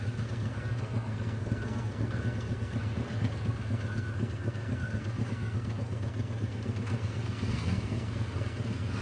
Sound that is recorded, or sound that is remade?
remade